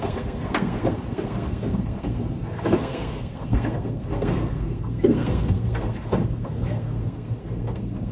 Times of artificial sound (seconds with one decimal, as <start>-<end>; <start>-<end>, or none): 0.0-8.1